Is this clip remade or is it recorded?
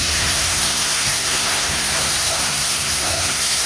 remade